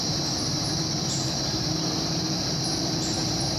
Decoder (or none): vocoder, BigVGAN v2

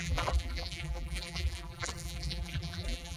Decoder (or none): vocoder, BigVGAN v2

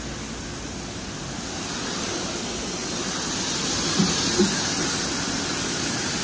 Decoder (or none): none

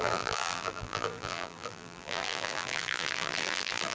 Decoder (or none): vocoder, BigVGAN v2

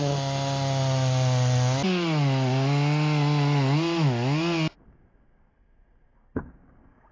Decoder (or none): none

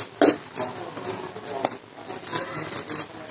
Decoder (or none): none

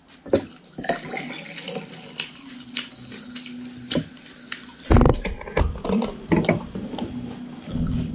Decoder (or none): none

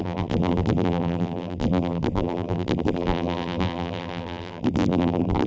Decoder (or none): vocoder, BigVGAN v2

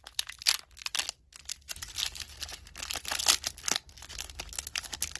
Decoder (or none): none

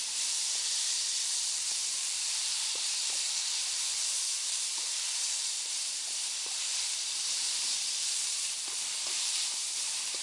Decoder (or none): vocoder, BigVGAN v2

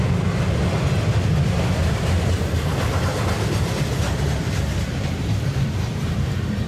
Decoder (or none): none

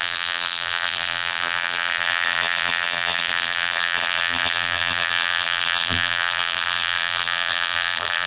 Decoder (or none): vocoder, BigVGAN v2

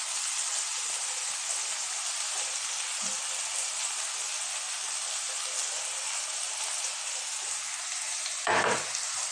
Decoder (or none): none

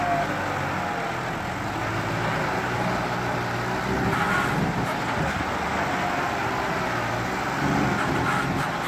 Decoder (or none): none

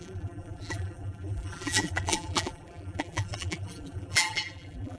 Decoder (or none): vocoder, BigVGAN v2